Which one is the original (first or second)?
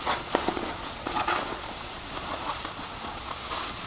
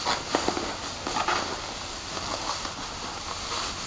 second